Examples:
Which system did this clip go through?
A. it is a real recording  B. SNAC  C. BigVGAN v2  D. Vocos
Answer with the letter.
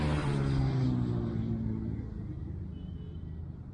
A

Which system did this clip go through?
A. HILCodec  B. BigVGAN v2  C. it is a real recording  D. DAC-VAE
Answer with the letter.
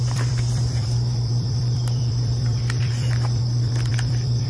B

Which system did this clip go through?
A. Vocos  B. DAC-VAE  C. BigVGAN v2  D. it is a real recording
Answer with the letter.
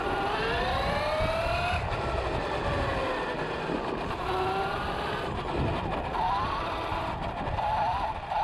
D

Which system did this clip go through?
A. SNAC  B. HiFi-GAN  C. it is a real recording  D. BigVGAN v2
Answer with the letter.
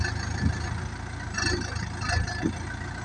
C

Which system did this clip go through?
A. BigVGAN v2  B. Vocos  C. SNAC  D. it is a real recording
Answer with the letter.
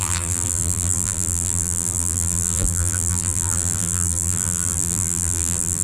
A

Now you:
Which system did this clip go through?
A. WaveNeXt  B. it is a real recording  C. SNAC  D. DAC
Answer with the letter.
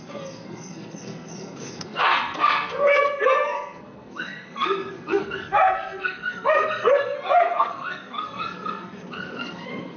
C